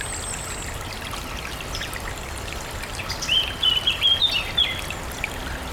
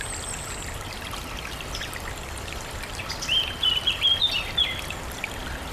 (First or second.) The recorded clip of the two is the first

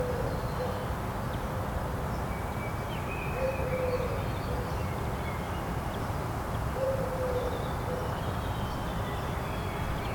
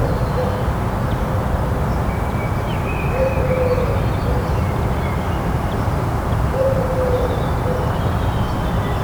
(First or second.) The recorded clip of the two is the first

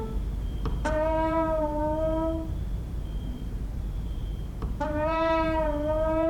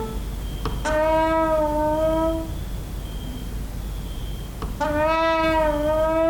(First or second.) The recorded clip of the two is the second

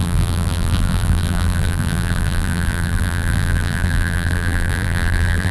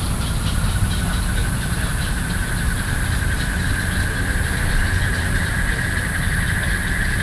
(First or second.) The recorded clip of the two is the second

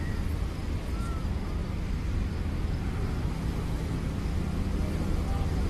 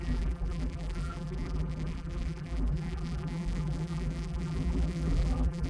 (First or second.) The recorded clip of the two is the first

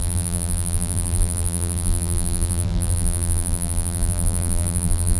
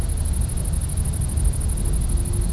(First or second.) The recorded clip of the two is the second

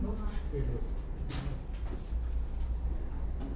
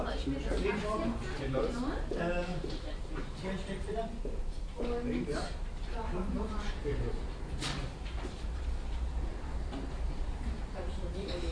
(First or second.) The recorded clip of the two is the first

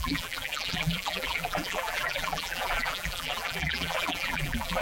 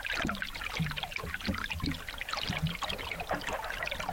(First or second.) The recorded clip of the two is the second